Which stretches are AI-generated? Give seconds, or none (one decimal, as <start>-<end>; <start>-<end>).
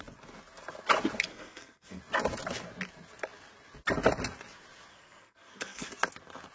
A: 1.3-2.0; 4.9-5.9